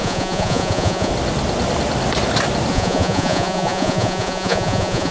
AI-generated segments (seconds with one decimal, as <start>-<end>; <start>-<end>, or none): 0.0-1.1; 2.7-5.1